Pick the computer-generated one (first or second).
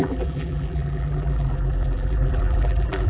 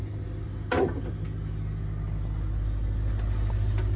first